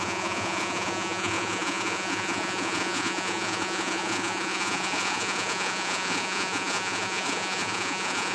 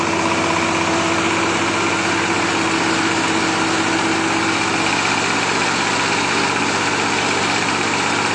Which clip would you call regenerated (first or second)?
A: first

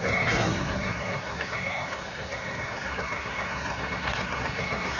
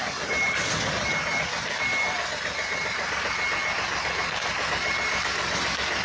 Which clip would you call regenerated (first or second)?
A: first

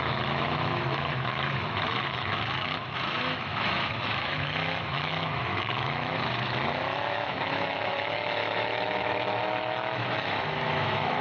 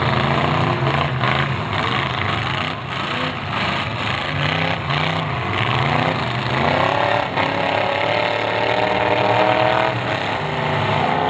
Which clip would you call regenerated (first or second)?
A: first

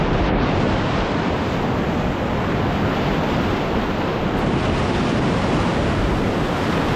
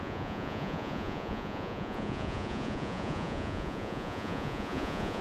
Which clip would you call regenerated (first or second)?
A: second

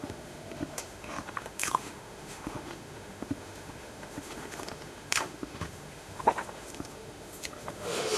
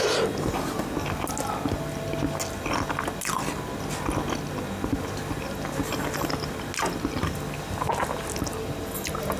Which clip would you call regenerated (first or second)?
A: first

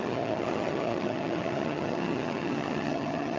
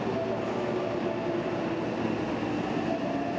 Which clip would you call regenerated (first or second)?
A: first